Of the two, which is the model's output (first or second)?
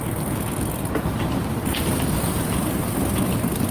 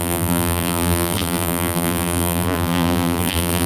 second